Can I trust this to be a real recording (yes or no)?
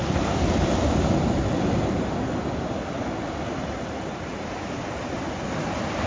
yes